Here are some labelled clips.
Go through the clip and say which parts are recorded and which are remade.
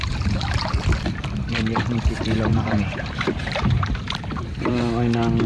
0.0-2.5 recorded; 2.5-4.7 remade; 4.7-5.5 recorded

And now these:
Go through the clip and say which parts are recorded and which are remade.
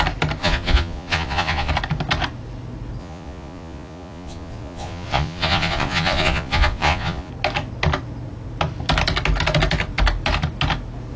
0.0-0.4 recorded; 0.4-1.7 remade; 1.7-3.0 recorded; 3.0-7.3 remade; 7.3-11.2 recorded